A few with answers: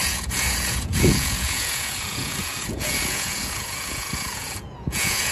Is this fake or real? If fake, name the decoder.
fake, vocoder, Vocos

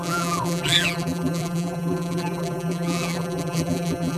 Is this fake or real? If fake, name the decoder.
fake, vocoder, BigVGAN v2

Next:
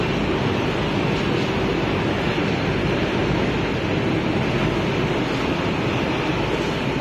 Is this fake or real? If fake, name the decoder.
real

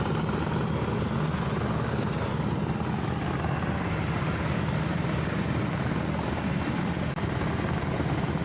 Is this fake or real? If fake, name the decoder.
real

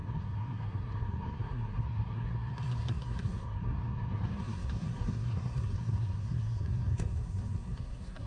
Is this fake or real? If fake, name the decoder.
fake, codec, SNAC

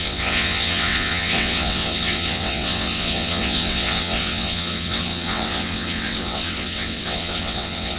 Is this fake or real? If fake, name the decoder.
fake, vocoder, WaveNeXt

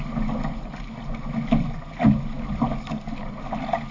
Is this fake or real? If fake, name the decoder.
real